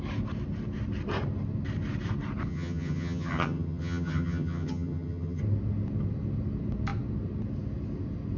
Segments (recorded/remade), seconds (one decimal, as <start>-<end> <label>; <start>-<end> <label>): 0.0-2.5 recorded; 2.5-5.4 remade; 5.4-8.4 recorded